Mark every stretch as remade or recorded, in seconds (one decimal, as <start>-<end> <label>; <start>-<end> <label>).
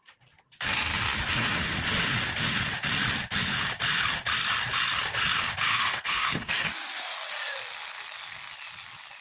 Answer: 0.0-5.7 recorded; 5.7-6.5 remade; 6.5-9.2 recorded